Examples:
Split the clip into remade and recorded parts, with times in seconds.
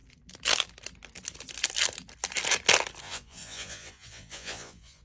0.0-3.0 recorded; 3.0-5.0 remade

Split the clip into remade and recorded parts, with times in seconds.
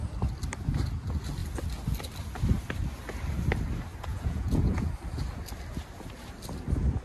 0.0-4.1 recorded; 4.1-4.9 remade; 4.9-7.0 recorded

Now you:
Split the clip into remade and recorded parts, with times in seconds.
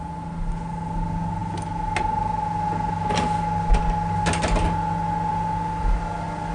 0.0-6.5 recorded